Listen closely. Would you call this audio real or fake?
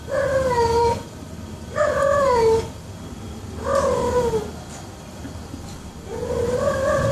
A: fake